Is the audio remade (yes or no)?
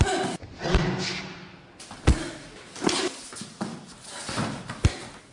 no